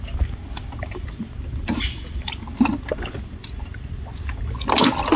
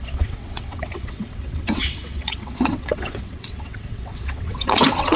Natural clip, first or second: first